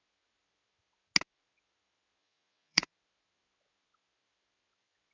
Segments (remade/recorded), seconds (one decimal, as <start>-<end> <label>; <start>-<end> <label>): 0.0-2.2 recorded; 2.2-2.9 remade; 2.9-5.1 recorded